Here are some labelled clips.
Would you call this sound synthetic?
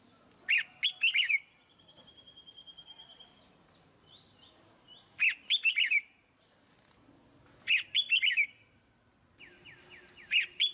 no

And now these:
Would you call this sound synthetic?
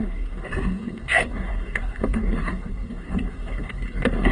yes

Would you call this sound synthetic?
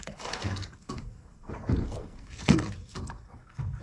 yes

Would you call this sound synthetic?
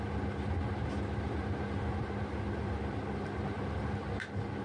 no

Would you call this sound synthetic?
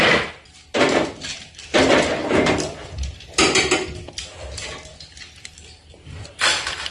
no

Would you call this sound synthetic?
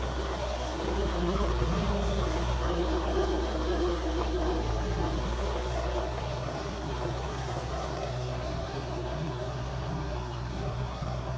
yes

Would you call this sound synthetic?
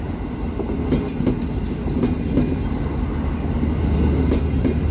no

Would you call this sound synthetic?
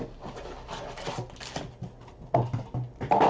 no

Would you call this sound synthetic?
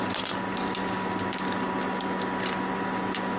no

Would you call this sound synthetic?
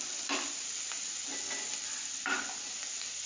no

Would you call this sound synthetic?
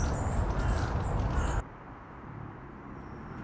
no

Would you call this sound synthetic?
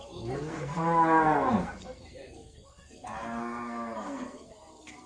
yes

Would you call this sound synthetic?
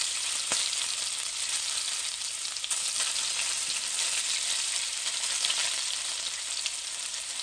no